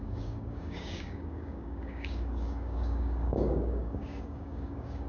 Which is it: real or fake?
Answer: fake